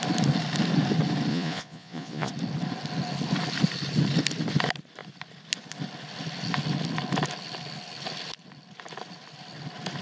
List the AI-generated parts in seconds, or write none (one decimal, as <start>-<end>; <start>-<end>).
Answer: 1.3-2.3